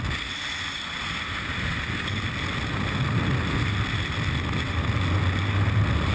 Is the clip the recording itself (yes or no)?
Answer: yes